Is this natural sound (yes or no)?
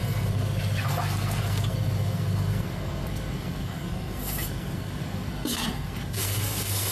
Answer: no